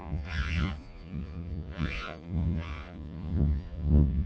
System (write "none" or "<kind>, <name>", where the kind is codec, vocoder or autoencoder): vocoder, Vocos